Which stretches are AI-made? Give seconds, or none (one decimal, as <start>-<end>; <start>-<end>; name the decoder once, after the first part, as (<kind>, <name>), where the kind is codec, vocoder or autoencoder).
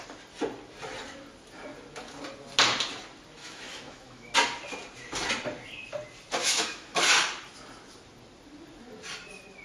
3.4-4.3 (autoencoder, DAC-VAE); 6.4-7.1